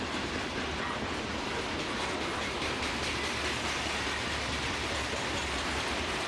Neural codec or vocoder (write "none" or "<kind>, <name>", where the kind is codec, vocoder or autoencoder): none